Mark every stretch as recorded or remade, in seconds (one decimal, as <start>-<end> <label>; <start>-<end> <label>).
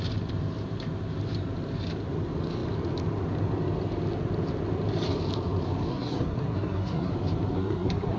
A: 0.0-5.9 recorded; 5.9-7.1 remade; 7.1-7.5 recorded; 7.5-8.2 remade